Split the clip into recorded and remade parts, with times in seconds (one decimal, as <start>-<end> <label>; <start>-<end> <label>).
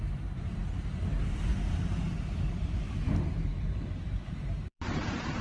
0.0-5.4 remade